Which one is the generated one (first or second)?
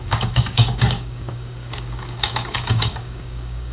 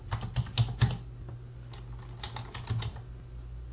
first